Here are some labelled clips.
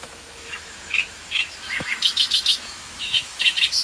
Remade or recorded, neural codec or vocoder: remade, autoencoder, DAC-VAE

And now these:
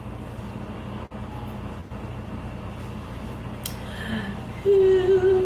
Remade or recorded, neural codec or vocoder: recorded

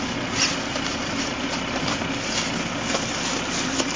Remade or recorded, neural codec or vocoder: recorded